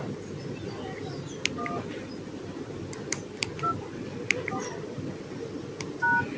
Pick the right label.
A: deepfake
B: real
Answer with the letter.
B